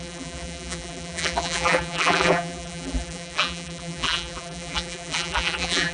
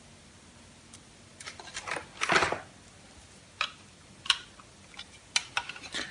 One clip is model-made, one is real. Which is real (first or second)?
second